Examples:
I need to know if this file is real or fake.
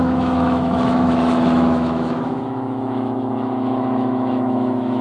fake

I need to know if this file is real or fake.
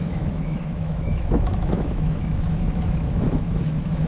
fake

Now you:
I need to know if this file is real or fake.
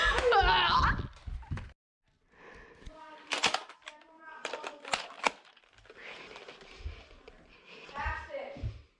real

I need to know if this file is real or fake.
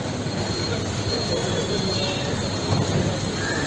real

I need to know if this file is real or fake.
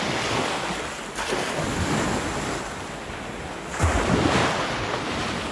real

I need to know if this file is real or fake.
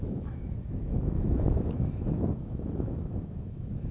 fake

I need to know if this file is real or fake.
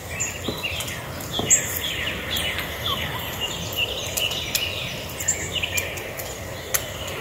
real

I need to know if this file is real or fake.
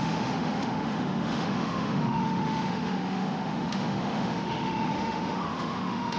fake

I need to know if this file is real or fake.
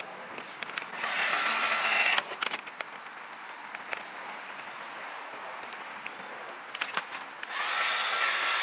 real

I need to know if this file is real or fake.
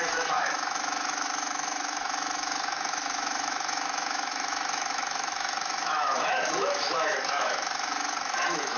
fake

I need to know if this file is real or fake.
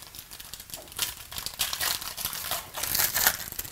real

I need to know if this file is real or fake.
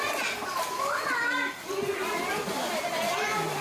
real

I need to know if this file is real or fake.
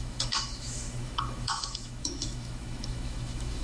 fake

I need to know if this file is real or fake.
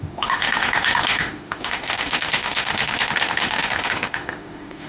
fake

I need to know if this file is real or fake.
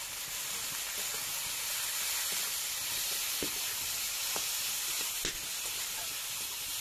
real